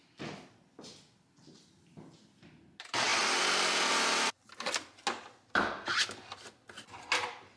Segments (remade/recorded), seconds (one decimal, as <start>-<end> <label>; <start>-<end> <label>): 0.0-7.6 recorded